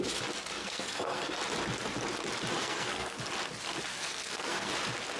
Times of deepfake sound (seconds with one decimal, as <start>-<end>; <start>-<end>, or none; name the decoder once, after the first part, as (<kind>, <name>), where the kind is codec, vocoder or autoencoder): 0.6-1.3 (codec, SNAC); 2.6-3.2; 3.9-4.7